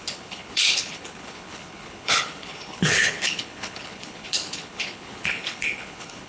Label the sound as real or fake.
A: fake